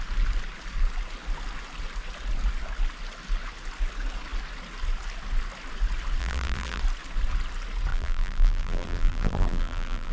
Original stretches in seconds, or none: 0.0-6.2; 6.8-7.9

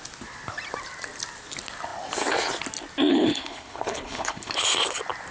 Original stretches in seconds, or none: 0.0-3.1; 4.5-5.3

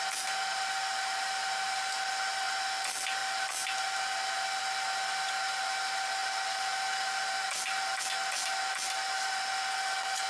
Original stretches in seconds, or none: 0.0-10.3

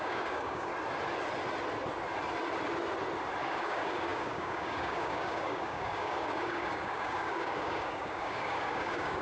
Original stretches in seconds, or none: 0.7-3.4

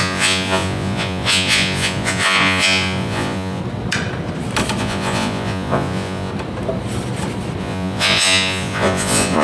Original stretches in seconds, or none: 3.6-4.8; 6.3-7.6

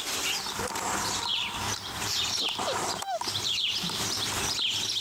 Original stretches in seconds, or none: 0.0-1.3; 4.3-5.0